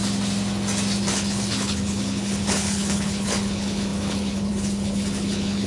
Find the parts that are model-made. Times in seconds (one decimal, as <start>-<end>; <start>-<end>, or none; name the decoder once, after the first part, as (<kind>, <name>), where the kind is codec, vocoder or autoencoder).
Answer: 1.1-5.7 (codec, HILCodec)